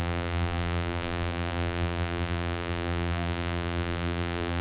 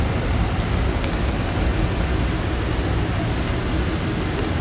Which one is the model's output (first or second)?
first